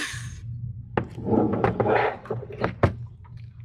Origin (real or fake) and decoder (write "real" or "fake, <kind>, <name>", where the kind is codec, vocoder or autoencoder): real